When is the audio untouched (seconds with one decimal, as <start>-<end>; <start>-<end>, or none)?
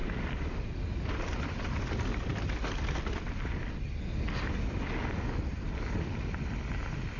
3.2-7.2